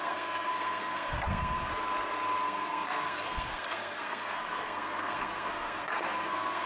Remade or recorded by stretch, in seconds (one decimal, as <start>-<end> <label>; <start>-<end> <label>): 0.0-1.7 remade; 1.7-2.4 recorded; 2.4-6.7 remade